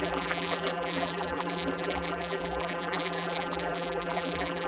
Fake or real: fake